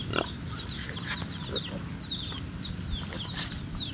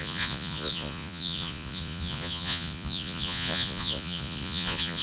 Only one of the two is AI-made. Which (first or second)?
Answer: second